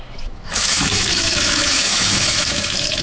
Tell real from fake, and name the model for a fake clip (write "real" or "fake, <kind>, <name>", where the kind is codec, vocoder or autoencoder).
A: fake, autoencoder, DAC-VAE